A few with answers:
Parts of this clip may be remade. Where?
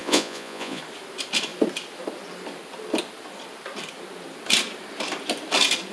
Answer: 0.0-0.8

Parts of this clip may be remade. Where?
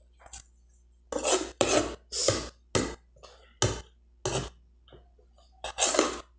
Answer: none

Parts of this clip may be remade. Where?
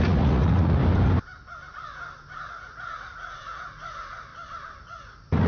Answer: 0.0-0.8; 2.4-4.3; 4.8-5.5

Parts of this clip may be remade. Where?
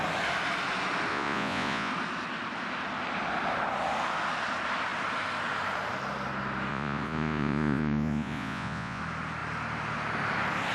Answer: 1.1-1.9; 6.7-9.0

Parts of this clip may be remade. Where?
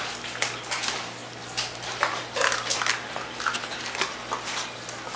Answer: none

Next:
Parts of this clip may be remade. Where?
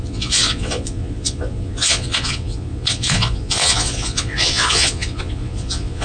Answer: 0.0-6.0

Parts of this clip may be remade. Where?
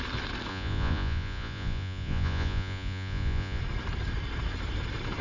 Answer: 0.5-3.6